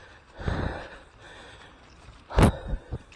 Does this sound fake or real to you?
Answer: real